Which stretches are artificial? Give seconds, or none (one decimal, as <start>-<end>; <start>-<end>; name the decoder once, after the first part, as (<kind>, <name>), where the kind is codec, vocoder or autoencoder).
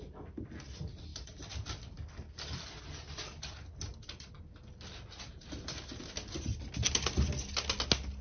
none